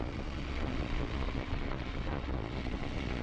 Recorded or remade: remade